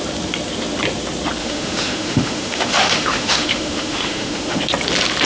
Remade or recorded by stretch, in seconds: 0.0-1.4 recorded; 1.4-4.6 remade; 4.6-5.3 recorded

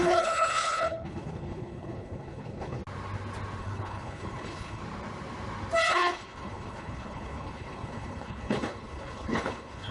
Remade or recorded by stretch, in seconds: 0.0-2.8 remade; 2.8-3.6 recorded; 3.6-4.8 remade; 4.8-5.9 recorded; 5.9-9.9 remade

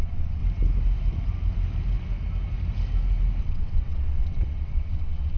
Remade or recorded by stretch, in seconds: 0.0-0.4 remade; 0.4-3.4 recorded; 3.4-5.4 remade

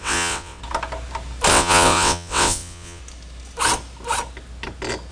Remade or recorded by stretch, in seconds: 0.0-0.6 remade; 0.6-1.5 recorded; 1.5-3.0 remade; 3.0-5.1 recorded

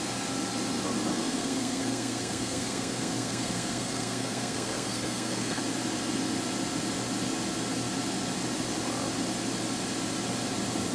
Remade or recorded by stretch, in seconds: 0.0-1.1 recorded; 1.1-5.6 remade; 5.6-10.9 recorded

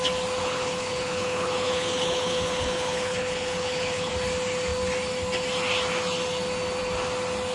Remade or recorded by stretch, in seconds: 0.0-0.4 recorded; 0.4-4.1 remade; 4.1-7.5 recorded

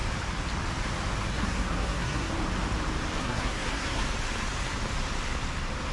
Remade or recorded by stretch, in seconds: 0.0-1.3 recorded; 1.3-2.3 remade; 2.3-3.2 recorded; 3.2-4.0 remade; 4.0-5.9 recorded